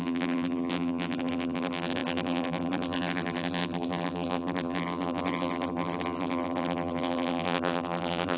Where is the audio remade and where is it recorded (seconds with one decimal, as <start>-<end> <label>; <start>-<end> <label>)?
0.0-8.4 remade